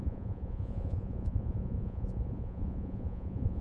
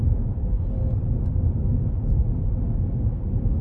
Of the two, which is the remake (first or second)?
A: first